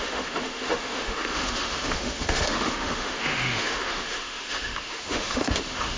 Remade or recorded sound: remade